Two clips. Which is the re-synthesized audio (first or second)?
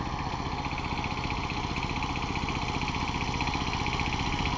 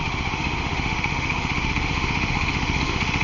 second